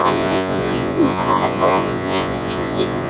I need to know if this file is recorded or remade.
remade